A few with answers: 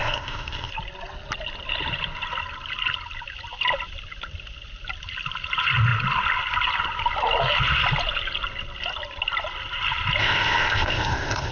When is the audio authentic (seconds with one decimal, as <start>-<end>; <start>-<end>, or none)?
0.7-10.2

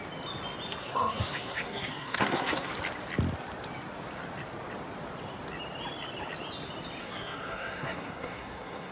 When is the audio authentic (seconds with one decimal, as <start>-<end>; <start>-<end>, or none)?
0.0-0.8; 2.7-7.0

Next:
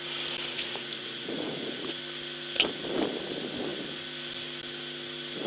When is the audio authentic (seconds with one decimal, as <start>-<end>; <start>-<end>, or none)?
0.0-0.5; 1.9-5.5

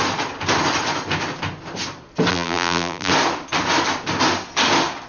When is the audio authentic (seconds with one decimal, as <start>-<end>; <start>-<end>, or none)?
0.0-2.3; 3.1-5.1

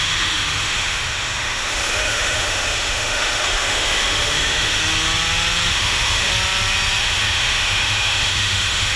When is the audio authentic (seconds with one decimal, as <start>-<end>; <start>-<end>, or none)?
4.8-5.7; 6.3-7.0